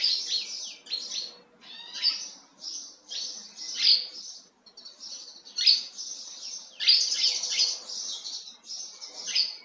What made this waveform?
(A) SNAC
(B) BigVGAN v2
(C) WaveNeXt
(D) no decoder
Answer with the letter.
D